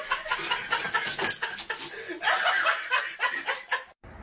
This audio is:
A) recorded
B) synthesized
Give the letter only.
A